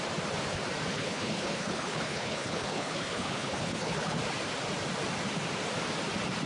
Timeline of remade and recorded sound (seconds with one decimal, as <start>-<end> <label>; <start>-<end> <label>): 0.0-0.9 recorded; 0.9-4.2 remade; 4.2-6.5 recorded